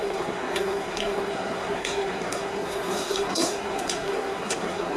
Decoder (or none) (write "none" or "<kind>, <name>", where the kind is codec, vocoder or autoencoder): codec, SNAC